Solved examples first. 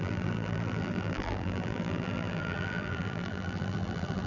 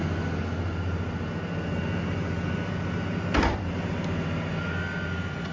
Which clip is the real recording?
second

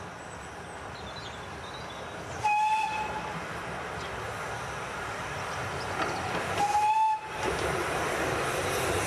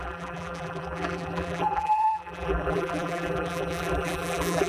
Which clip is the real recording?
first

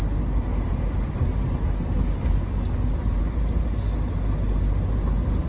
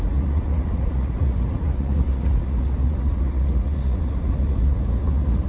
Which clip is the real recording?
first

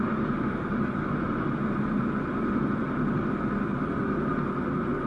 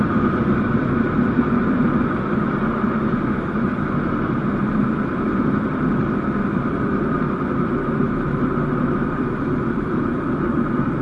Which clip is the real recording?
first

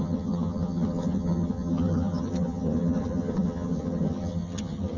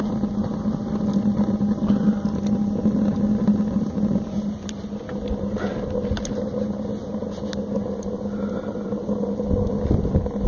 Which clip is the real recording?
second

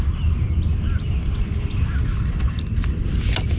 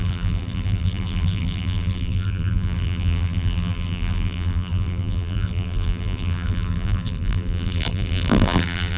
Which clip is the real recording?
first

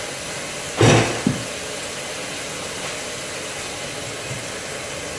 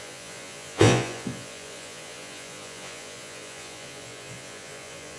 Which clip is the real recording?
first